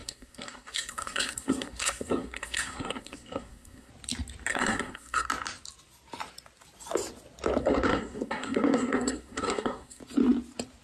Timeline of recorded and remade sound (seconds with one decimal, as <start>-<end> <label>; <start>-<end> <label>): 0.0-3.9 remade; 3.9-4.5 recorded; 4.5-5.3 remade; 5.3-7.6 recorded; 7.6-10.0 remade; 10.0-10.8 recorded

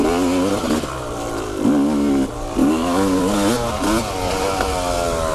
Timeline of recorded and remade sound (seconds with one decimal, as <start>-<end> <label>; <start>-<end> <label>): 0.0-2.6 recorded; 2.6-3.2 remade; 3.2-5.3 recorded

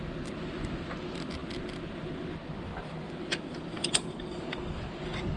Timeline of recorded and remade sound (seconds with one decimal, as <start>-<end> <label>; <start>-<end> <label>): 0.0-5.4 recorded

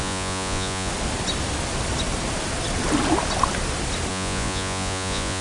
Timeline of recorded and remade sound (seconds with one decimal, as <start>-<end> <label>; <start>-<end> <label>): 0.0-0.9 remade; 0.9-4.1 recorded; 4.1-5.4 remade

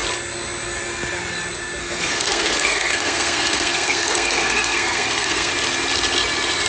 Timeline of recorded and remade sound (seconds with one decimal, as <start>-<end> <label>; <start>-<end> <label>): 0.0-1.8 recorded; 1.8-5.5 remade; 5.5-6.7 recorded